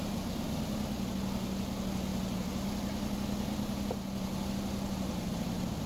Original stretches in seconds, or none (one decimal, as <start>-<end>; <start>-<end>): 0.0-5.9